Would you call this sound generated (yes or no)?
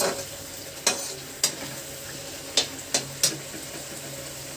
no